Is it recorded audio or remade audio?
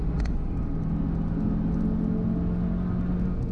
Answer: recorded